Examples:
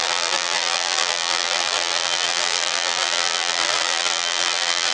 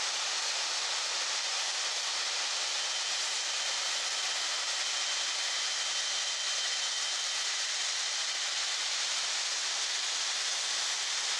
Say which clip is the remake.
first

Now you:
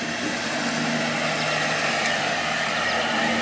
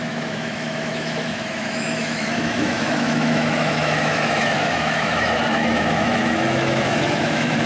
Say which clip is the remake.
second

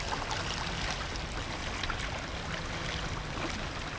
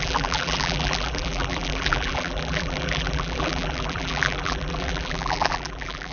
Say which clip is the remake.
second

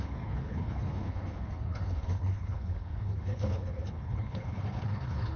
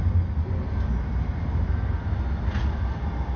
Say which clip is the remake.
first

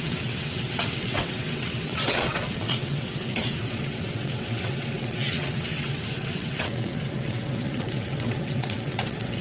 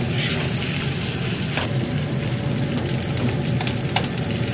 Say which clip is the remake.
first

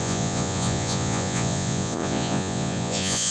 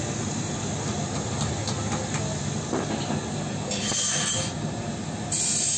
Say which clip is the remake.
first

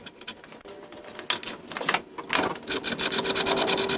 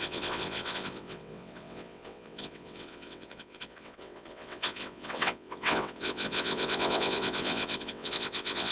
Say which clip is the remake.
second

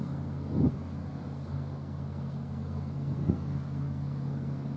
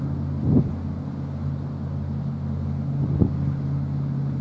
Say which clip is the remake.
first